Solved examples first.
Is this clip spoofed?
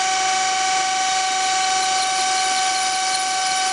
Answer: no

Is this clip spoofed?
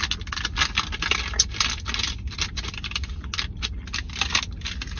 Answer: no